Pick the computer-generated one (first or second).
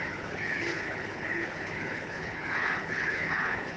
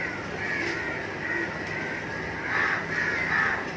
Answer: first